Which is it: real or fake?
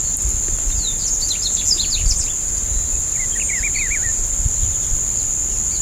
real